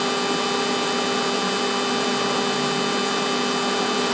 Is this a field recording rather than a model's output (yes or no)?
yes